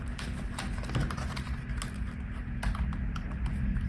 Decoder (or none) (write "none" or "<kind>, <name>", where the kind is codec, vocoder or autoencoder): none